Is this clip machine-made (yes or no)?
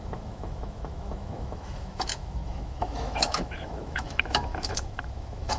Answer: yes